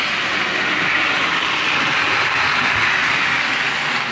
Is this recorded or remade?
recorded